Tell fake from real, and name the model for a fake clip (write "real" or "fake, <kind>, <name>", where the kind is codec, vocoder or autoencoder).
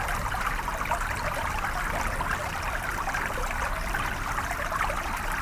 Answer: fake, vocoder, BigVGAN v2